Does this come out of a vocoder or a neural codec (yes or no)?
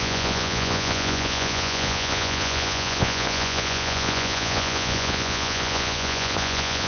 yes